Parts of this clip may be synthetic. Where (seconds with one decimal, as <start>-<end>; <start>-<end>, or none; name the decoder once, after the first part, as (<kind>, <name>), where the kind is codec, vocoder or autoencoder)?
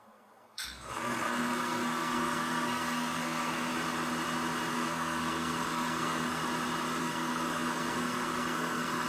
0.0-3.7 (codec, SNAC); 4.7-6.4; 7.0-9.1